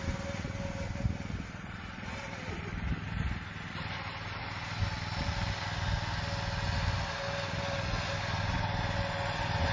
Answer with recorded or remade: recorded